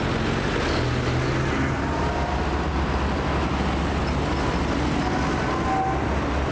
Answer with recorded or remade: recorded